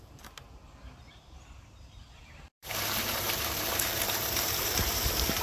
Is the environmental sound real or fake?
fake